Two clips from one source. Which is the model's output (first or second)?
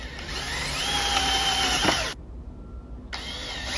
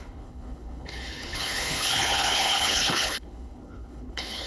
second